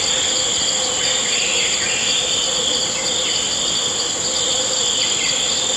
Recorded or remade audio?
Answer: recorded